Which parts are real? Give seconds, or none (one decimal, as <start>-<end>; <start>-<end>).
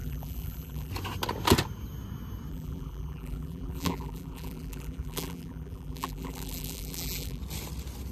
0.9-2.5; 7.4-8.1